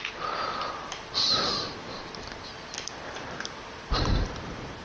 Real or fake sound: real